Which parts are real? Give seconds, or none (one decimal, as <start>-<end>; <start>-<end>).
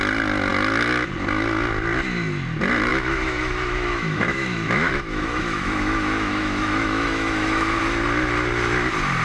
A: 0.0-2.9; 7.8-9.2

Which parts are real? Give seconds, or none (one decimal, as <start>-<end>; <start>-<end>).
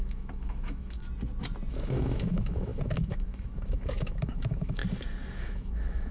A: 1.0-1.7; 4.8-5.4